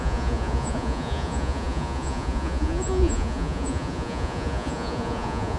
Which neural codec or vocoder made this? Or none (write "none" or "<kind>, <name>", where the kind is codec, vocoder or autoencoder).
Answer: vocoder, Vocos